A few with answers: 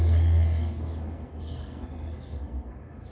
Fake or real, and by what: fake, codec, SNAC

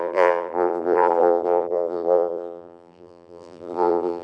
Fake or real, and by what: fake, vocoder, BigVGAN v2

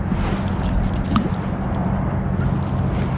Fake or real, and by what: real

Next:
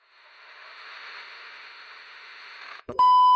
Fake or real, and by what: fake, autoencoder, DAC-VAE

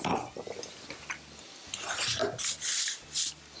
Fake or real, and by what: real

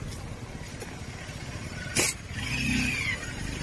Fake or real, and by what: real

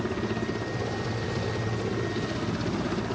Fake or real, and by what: real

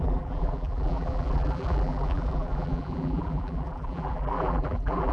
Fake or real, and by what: fake, vocoder, BigVGAN v2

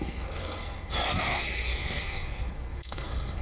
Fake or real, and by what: fake, codec, SNAC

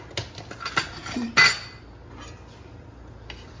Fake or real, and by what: real